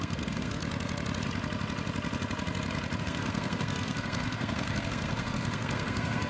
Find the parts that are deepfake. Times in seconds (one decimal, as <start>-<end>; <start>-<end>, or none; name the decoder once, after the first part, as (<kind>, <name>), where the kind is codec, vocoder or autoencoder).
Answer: 0.0-0.6 (codec, SNAC); 3.0-6.3